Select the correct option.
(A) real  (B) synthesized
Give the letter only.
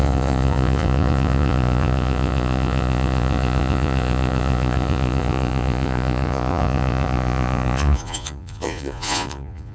B